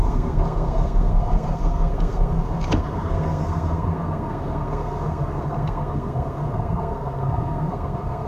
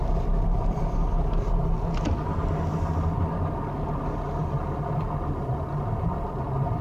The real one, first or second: second